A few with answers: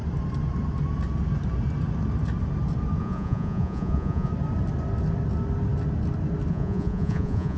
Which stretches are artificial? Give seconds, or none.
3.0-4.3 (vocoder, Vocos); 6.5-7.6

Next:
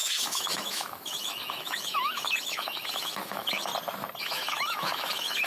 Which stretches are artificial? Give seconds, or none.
0.0-3.7 (autoencoder, DAC-VAE); 4.2-5.5

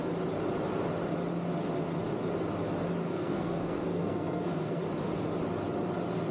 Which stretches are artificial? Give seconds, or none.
3.0-4.8 (codec, SNAC)